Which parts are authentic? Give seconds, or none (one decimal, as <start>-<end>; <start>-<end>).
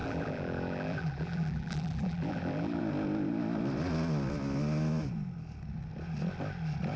2.8-7.0